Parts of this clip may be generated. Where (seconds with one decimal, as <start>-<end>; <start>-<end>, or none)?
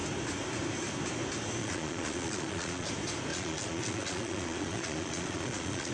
1.6-2.9; 3.3-5.9